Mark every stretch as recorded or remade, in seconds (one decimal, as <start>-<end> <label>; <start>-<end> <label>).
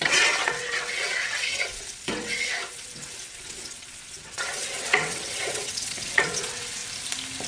0.0-6.8 remade; 6.8-7.5 recorded